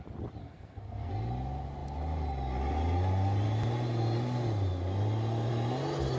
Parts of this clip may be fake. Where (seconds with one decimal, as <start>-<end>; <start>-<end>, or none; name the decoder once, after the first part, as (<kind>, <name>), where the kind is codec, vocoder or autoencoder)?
0.4-1.1 (codec, SNAC)